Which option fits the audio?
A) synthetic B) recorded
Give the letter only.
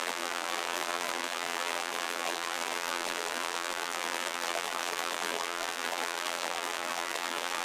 A